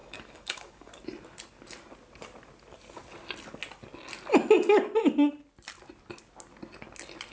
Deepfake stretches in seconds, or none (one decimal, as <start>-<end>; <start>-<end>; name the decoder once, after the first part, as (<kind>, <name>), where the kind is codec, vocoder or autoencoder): 0.0-0.9 (codec, DAC)